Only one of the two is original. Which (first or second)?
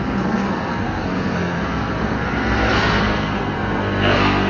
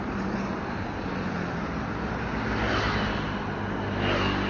second